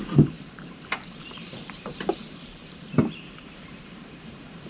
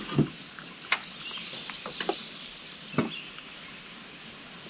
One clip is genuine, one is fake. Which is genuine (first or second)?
second